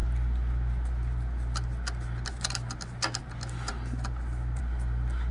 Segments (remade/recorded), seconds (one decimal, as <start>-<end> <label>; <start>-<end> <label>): 0.0-5.3 recorded